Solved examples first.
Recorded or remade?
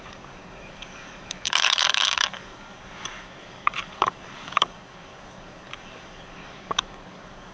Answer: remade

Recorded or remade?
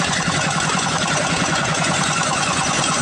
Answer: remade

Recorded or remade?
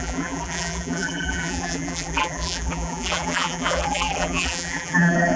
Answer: remade